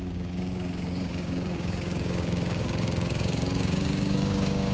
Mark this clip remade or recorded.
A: remade